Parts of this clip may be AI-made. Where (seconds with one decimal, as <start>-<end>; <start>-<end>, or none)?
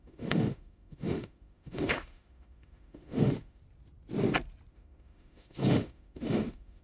0.0-3.6; 4.7-6.8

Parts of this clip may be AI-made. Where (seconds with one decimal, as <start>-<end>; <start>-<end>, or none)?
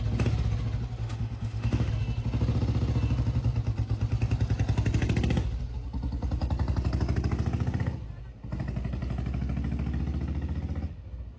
1.0-1.9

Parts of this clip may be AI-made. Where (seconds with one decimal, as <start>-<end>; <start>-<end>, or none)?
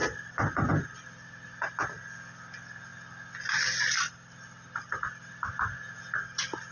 none